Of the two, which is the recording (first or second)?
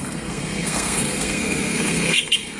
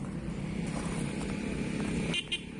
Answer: second